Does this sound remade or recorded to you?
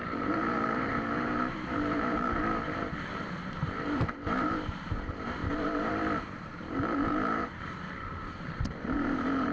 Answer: remade